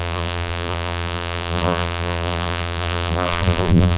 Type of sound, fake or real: fake